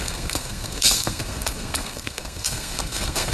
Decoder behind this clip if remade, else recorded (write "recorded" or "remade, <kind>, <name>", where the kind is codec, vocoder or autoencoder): remade, codec, SNAC